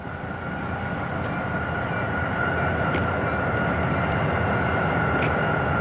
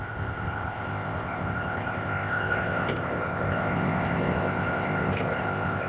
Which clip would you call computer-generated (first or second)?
second